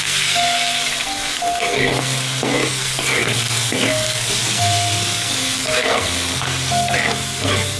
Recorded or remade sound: remade